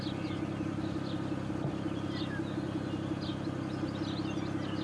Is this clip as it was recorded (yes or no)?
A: yes